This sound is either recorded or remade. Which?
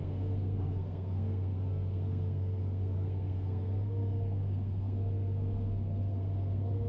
remade